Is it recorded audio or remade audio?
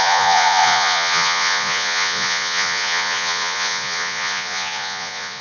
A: remade